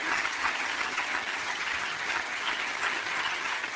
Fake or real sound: fake